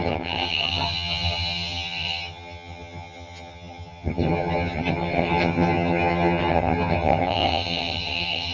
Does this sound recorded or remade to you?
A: remade